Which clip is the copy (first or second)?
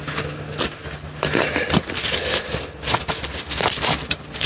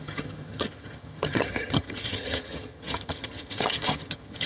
second